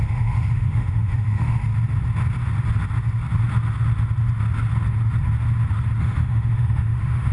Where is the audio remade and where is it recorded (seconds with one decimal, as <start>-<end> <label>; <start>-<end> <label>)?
0.0-1.6 remade; 1.6-6.0 recorded; 6.0-7.3 remade